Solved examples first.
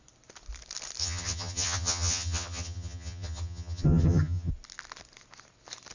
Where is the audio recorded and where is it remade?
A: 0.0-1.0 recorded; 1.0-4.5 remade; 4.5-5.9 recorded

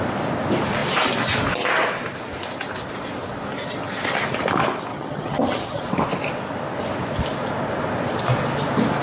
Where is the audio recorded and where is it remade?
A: 0.0-4.9 recorded; 4.9-5.8 remade; 5.8-9.0 recorded

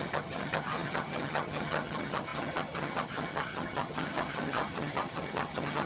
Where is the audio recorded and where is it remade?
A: 0.0-5.9 remade

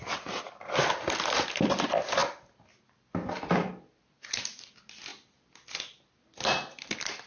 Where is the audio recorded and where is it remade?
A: 0.0-7.3 recorded

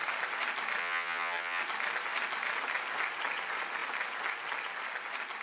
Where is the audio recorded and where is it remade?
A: 0.0-0.8 recorded; 0.8-1.6 remade; 1.6-5.4 recorded

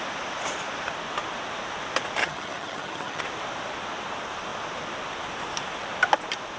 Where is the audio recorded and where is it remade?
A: 0.0-2.2 recorded; 2.2-3.2 remade; 3.2-6.6 recorded

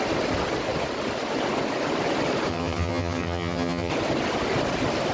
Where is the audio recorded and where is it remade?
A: 0.0-2.5 recorded; 2.5-3.9 remade; 3.9-5.1 recorded